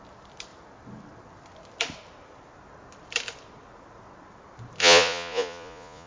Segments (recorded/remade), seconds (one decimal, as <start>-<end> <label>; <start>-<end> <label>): 0.0-4.8 recorded; 4.8-6.1 remade